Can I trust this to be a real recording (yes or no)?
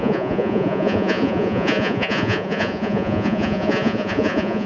no